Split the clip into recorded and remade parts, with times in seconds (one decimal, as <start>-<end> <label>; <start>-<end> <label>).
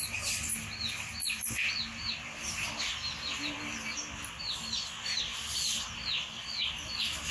0.0-7.3 recorded